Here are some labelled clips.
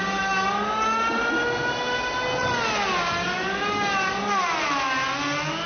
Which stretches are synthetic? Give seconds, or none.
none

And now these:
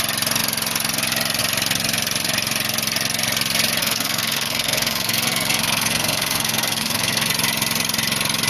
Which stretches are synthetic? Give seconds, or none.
3.8-7.3 (codec, SNAC)

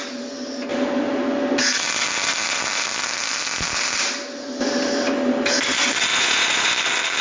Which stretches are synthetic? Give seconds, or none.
6.1-6.7 (vocoder, Vocos)

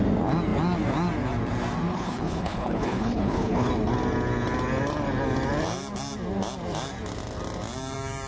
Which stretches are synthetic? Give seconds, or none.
1.9-3.7 (codec, HILCodec)

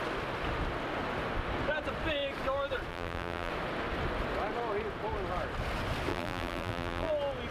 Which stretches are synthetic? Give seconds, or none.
2.9-3.5 (vocoder, BigVGAN v2); 6.1-7.1

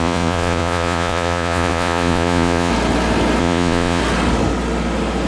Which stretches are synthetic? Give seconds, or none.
0.0-2.7 (vocoder, Vocos); 3.4-4.0